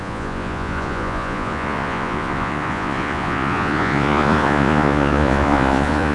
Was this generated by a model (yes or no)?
yes